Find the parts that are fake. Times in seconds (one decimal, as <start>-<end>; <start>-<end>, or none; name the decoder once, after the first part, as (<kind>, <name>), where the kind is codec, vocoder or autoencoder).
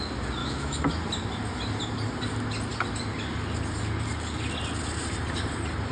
0.4-0.9 (autoencoder, DAC-VAE)